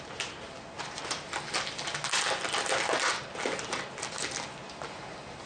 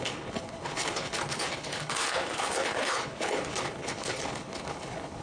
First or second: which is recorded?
first